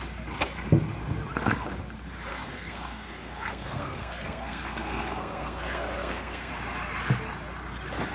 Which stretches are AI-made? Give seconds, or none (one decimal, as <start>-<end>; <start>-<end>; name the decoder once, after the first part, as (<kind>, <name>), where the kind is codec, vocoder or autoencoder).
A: 2.3-6.5 (codec, SNAC)